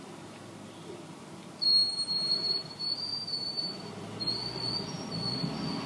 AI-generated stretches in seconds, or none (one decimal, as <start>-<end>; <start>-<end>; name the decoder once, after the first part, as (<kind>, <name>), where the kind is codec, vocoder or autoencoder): 1.8-3.7 (vocoder, BigVGAN v2)